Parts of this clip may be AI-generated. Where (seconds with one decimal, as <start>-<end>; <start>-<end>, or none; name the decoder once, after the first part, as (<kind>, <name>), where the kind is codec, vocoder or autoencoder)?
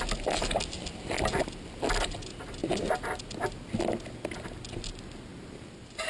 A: none